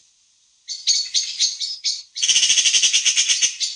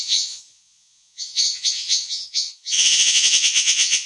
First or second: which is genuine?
first